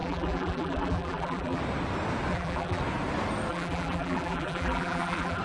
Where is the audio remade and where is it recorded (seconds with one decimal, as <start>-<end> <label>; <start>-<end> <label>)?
0.0-1.6 remade; 1.6-2.3 recorded; 2.3-2.8 remade; 2.8-3.5 recorded; 3.5-5.4 remade

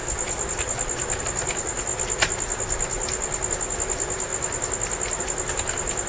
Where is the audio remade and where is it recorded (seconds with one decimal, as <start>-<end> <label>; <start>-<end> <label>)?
0.0-6.1 recorded

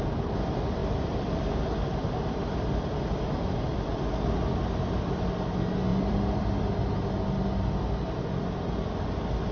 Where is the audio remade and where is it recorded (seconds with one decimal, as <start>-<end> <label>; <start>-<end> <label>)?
0.0-0.8 recorded; 0.8-3.8 remade; 3.8-5.9 recorded; 5.9-6.8 remade; 6.8-9.5 recorded

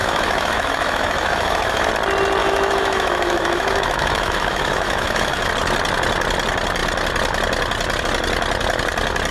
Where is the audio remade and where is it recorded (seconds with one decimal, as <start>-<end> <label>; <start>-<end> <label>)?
0.0-1.9 remade; 1.9-2.4 recorded; 2.4-5.5 remade; 5.5-9.3 recorded

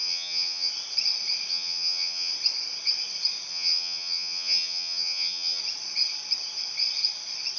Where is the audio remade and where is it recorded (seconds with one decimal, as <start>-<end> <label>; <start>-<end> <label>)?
0.0-0.7 remade; 0.7-1.5 recorded; 1.5-2.3 remade; 2.3-3.5 recorded; 3.5-5.6 remade; 5.6-7.6 recorded

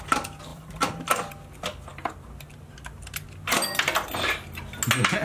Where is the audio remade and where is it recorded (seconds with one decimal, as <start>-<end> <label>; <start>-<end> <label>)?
0.0-0.5 recorded; 0.5-1.3 remade; 1.3-5.2 recorded